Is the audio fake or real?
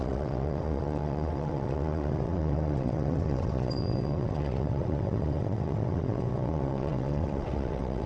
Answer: fake